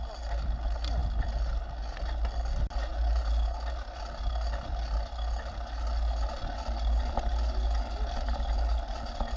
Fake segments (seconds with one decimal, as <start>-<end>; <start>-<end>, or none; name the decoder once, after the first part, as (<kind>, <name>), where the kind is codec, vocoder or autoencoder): none